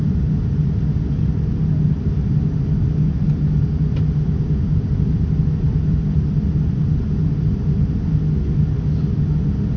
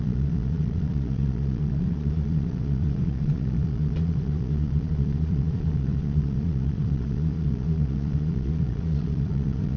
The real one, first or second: first